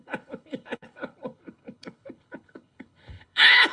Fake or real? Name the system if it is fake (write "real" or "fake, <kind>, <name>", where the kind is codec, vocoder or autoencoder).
fake, codec, HILCodec